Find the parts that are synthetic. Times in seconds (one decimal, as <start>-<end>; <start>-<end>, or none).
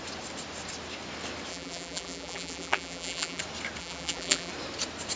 1.5-3.4; 3.8-4.5